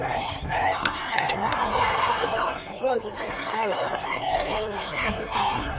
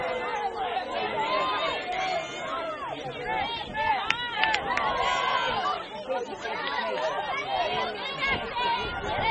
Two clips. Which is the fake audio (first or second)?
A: first